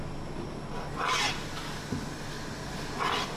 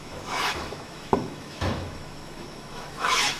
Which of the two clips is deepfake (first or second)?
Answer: second